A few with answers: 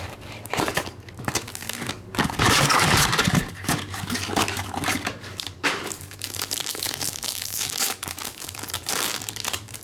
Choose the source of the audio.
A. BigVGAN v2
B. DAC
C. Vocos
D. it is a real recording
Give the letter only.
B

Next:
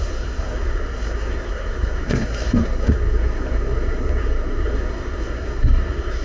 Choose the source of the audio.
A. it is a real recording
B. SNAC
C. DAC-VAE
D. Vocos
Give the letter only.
B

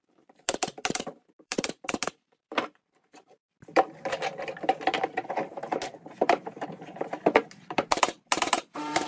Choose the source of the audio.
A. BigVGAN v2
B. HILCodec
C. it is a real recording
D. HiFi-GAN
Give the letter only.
A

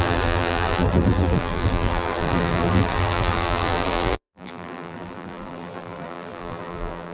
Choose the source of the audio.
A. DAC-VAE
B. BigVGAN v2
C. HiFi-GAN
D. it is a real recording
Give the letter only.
B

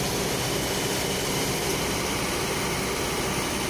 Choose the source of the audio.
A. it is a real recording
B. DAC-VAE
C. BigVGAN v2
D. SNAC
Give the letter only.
A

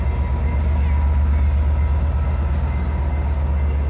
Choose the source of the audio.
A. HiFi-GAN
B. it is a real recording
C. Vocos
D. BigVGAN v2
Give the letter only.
B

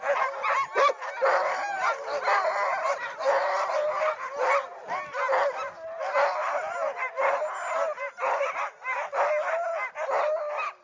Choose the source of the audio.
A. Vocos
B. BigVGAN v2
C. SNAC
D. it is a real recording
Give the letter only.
D